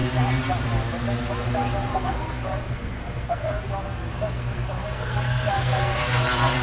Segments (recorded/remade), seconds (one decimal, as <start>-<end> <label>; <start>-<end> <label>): 0.0-1.9 recorded; 1.9-3.6 remade; 3.6-4.1 recorded; 4.1-6.0 remade; 6.0-6.6 recorded